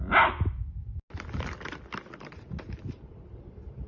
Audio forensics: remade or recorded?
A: recorded